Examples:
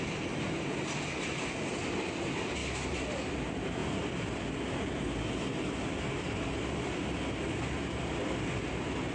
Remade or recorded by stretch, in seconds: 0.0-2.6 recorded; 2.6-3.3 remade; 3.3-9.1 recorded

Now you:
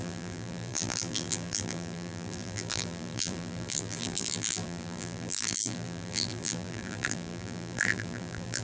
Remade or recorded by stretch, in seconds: 0.0-8.6 remade